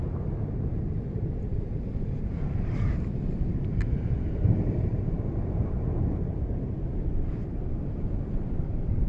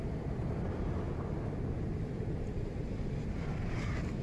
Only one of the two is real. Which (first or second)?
second